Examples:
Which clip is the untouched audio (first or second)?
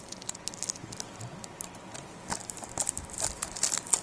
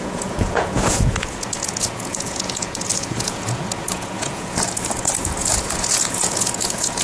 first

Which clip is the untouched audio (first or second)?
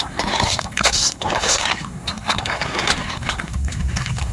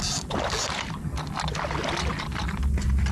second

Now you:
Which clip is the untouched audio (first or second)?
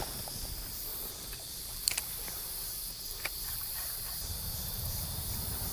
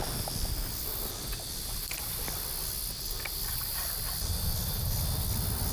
second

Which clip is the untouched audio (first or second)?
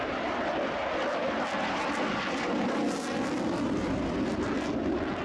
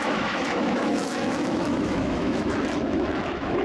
first